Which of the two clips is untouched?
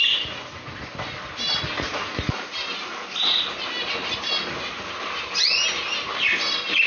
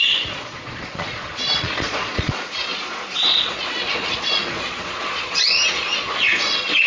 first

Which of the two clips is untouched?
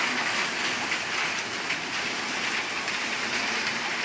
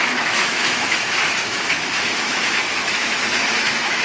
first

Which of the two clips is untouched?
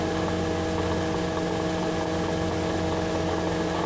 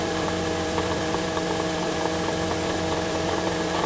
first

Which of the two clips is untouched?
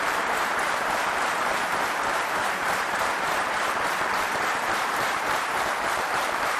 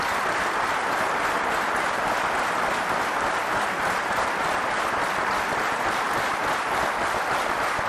second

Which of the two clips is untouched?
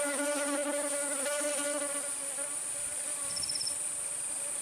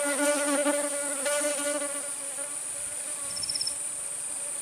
second